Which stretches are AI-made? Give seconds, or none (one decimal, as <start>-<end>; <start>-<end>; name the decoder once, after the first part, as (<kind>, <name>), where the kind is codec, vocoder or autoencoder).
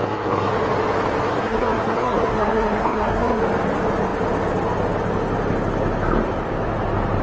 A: 0.0-0.5 (codec, SNAC); 1.3-3.4